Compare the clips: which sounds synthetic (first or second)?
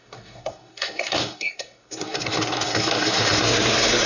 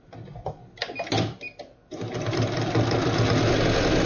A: first